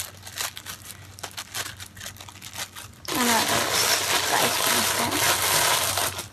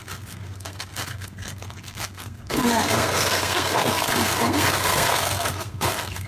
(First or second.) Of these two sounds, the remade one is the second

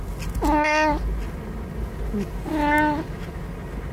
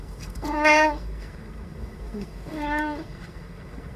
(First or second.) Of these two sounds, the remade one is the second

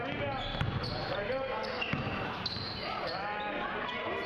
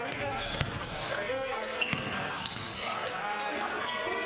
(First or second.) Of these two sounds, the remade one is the second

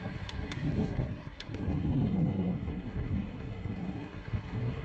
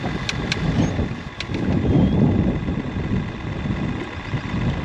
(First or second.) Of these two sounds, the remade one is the first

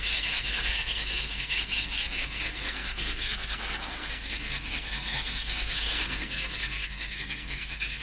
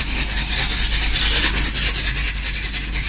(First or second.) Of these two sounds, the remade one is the first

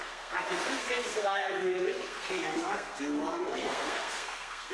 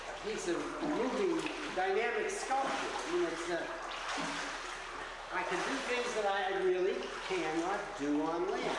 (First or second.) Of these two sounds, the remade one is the first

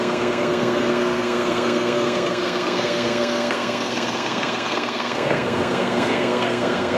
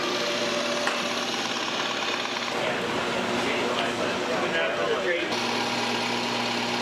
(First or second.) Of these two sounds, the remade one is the first